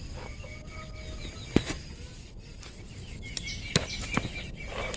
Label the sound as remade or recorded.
recorded